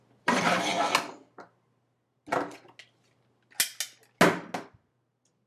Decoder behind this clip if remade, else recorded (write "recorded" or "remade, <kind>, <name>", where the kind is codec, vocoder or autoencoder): recorded